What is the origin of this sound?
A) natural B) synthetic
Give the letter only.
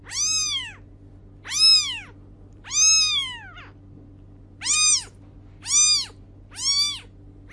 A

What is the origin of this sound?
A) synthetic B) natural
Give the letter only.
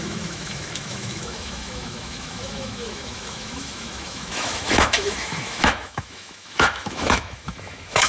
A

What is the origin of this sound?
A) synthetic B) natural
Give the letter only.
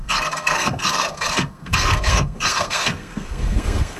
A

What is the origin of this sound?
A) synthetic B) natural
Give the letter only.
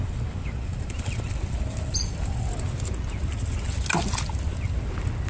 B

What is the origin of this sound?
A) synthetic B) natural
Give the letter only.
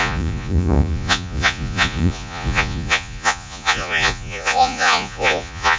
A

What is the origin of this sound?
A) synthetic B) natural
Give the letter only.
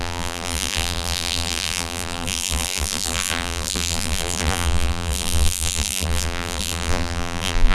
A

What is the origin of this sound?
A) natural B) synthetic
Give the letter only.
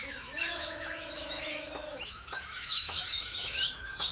B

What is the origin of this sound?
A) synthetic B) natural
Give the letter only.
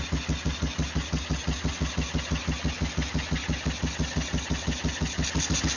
B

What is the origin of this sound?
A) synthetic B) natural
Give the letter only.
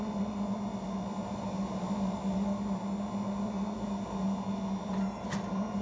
B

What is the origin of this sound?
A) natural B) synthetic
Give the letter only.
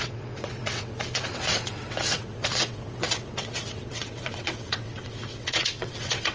B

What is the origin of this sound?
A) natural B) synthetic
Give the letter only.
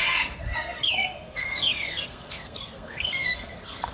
B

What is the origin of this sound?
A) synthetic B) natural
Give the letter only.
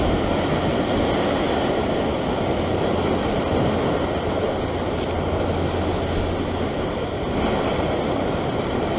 B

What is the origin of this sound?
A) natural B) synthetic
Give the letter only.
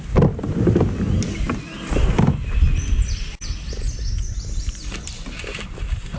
A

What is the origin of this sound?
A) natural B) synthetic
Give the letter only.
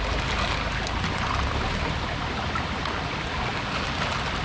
A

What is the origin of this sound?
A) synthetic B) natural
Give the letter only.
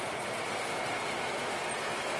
B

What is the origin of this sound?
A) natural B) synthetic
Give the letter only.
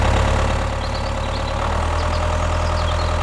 A